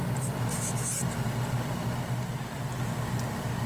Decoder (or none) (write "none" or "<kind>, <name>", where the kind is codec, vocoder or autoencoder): none